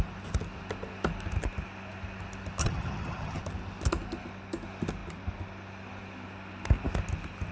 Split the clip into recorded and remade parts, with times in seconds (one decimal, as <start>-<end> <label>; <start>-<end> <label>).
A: 0.0-2.6 recorded; 2.6-3.4 remade; 3.4-7.5 recorded